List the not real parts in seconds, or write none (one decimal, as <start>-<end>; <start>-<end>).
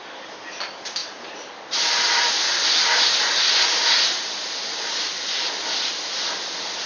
none